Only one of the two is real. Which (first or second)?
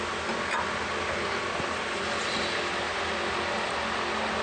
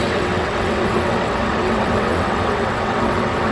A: first